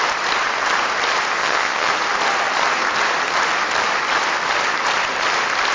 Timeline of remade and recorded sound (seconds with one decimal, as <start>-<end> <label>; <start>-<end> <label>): 0.0-1.4 recorded; 1.4-1.9 remade; 1.9-5.7 recorded